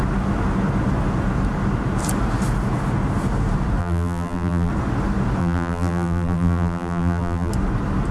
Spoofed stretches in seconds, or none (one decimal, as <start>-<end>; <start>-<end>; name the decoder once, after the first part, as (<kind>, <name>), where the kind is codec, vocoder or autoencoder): 3.8-4.7 (vocoder, BigVGAN v2); 5.4-7.5